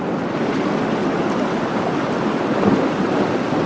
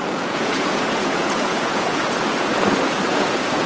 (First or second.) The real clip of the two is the first